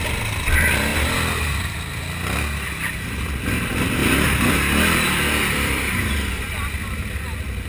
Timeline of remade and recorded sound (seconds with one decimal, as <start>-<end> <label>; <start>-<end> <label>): 0.0-4.0 recorded; 4.0-6.1 remade; 6.1-7.7 recorded